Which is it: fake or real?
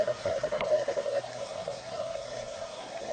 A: fake